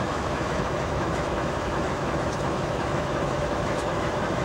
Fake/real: fake